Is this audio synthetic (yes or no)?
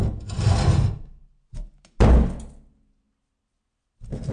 no